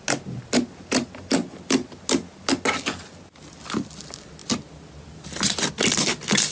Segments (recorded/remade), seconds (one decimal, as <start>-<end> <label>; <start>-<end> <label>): 0.0-6.5 recorded